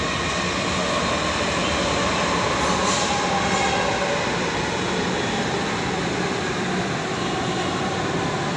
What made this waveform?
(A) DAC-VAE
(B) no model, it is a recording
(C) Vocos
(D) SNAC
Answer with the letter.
B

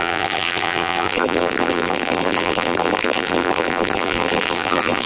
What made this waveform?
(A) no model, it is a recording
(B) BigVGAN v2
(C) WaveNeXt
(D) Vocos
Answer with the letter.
B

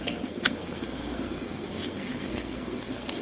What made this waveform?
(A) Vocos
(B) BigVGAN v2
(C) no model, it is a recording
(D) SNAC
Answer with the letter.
D